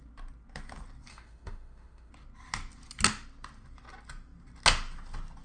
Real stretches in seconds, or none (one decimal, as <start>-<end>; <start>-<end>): 0.0-1.1; 2.1-5.4